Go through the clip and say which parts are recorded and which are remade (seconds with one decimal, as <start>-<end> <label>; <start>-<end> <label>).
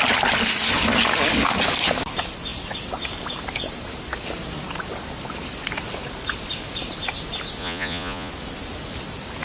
0.0-7.6 recorded; 7.6-8.3 remade; 8.3-9.4 recorded